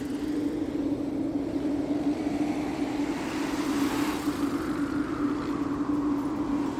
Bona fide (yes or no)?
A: yes